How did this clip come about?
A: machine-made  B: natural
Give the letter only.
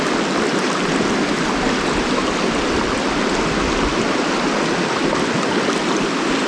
B